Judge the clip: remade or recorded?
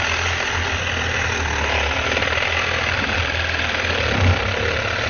recorded